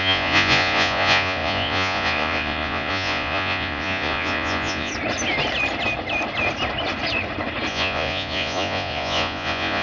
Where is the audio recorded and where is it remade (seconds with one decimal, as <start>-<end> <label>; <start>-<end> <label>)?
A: 0.0-4.9 remade; 4.9-7.7 recorded; 7.7-9.8 remade